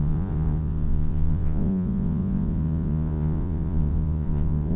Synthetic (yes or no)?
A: yes